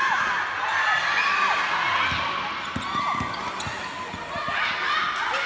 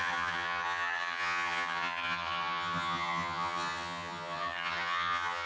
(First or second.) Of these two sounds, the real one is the first